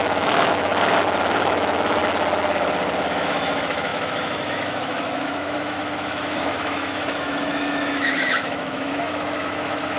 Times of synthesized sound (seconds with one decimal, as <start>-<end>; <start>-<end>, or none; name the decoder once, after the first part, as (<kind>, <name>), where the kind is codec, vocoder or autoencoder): 0.0-0.7 (autoencoder, DAC-VAE); 1.3-2.0; 3.1-10.0